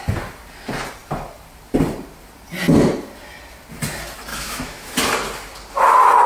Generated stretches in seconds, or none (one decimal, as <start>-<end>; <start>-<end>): 4.3-5.0